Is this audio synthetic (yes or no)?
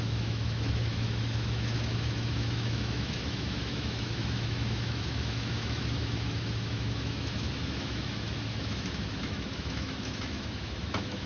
yes